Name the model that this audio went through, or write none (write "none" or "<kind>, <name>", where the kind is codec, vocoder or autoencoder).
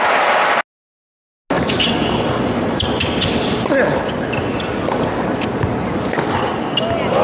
none